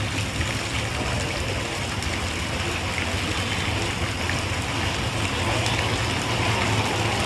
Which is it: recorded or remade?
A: recorded